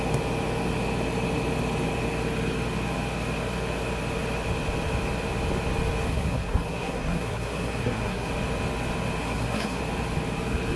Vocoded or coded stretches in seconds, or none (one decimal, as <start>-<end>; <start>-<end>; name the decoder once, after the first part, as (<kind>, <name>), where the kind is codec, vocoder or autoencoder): 6.1-8.3 (codec, SNAC); 9.2-9.8